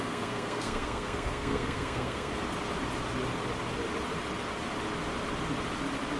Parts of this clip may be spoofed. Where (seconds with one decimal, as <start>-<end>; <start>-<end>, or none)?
0.0-2.3